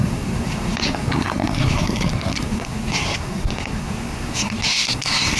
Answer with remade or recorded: remade